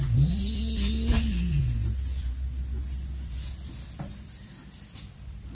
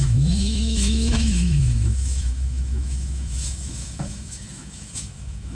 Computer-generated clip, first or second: second